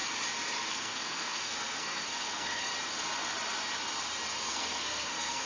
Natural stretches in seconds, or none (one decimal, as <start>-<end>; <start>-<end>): 0.0-0.7; 2.7-4.5

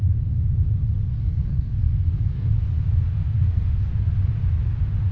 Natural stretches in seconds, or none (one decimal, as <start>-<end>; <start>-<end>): 0.0-1.1; 2.5-3.2; 3.9-5.1